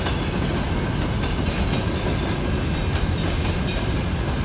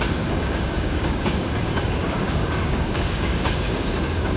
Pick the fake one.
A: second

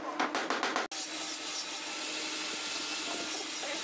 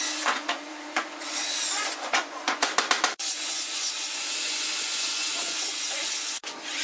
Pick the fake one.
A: second